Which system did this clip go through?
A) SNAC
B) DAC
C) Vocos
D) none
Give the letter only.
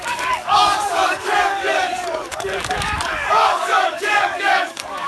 B